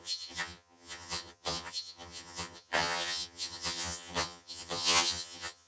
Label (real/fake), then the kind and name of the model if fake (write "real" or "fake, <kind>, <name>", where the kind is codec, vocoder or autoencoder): fake, vocoder, HiFi-GAN